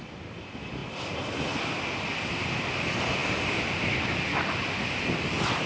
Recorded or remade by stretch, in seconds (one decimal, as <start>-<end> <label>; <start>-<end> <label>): 0.0-5.7 recorded